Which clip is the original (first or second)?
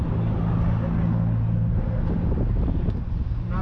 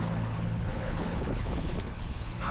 first